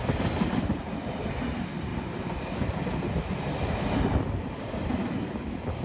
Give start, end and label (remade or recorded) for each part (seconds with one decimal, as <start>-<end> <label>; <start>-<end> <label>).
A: 0.0-5.8 recorded